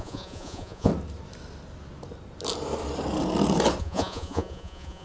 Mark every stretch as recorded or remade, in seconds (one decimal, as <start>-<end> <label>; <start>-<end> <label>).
0.0-0.9 remade; 0.9-3.8 recorded; 3.8-5.0 remade